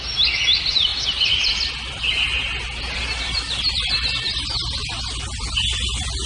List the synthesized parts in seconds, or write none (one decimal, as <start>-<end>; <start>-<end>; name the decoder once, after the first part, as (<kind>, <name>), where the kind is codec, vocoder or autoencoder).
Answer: none